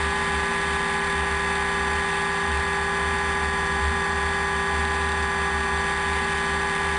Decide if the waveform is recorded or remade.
recorded